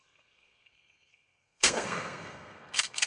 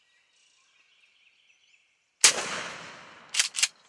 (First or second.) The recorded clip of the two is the second